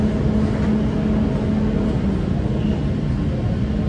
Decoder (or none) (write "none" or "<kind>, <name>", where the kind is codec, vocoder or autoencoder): none